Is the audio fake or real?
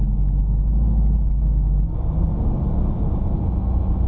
real